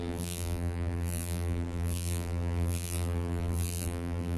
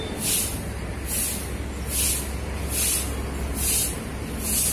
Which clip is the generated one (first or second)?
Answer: first